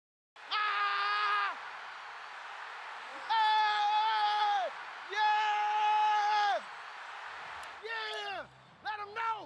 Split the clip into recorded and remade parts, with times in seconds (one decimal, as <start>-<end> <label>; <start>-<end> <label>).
0.0-9.5 recorded